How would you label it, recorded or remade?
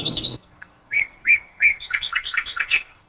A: remade